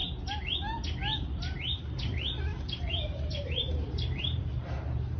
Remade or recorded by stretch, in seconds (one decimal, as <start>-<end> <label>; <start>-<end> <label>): 0.0-1.3 recorded; 1.3-5.2 remade